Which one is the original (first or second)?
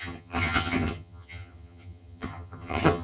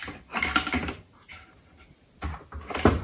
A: second